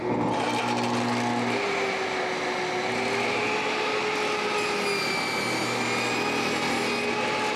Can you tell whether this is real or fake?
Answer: real